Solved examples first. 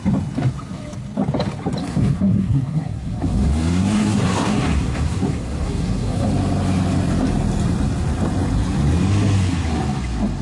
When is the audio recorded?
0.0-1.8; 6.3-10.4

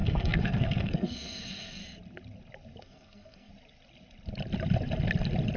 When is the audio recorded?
1.8-2.8; 3.5-5.6

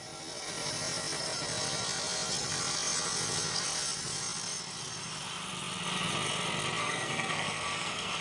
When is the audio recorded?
0.0-6.8

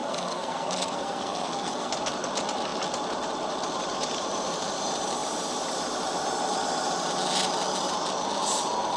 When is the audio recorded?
1.9-9.0

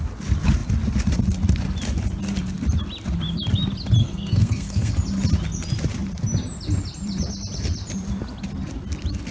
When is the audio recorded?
0.0-4.0; 4.9-9.3

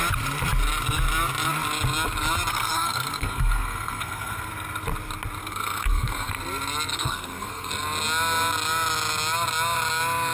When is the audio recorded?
0.0-2.5; 4.5-5.4; 6.3-6.9; 7.7-10.3

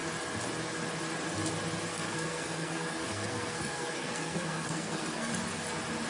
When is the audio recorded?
0.0-1.9; 5.3-6.1